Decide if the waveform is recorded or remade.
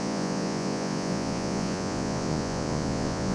remade